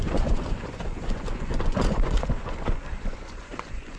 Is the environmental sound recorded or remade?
remade